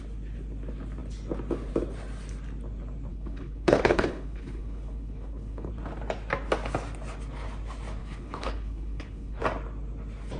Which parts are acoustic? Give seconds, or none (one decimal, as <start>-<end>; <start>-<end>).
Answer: 0.0-3.1; 5.7-8.0; 9.4-10.4